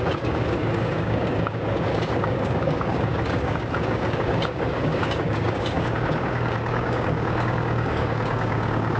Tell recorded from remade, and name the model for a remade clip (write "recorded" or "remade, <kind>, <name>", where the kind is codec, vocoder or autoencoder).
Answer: remade, codec, DAC